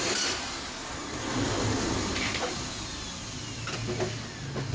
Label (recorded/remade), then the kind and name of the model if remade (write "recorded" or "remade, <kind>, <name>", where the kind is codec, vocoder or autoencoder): recorded